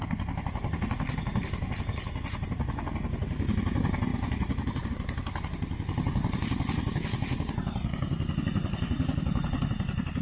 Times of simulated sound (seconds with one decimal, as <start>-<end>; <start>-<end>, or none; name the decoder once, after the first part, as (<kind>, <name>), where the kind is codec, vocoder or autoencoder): 4.1-4.9 (vocoder, BigVGAN v2)